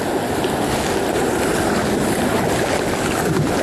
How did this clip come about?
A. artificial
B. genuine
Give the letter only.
B